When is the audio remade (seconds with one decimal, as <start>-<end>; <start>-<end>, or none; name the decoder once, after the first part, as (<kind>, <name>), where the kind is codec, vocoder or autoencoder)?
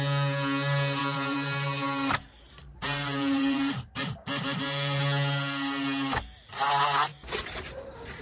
1.0-5.0 (vocoder, BigVGAN v2)